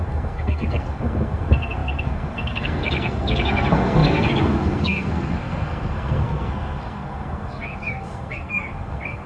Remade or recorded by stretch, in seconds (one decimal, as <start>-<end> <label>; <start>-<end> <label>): 0.0-9.3 remade